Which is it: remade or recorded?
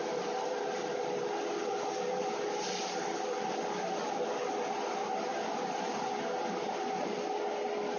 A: recorded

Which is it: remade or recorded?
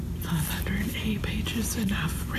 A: recorded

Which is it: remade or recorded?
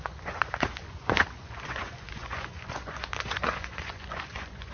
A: remade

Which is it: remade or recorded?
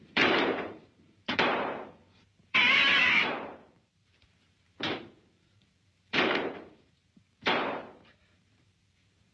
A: remade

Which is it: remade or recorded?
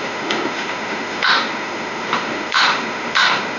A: remade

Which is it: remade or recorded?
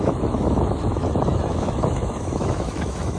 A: remade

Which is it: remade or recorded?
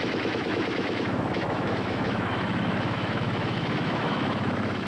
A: remade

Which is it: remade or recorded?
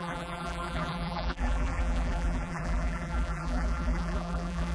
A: remade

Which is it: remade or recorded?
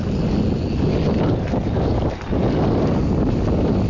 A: recorded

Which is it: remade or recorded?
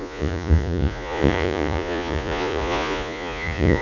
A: remade